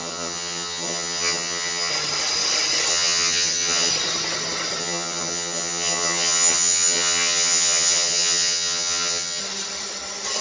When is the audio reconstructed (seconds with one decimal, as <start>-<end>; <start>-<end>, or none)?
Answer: 0.0-1.9; 2.9-3.9; 4.8-9.4